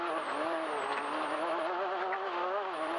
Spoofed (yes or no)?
no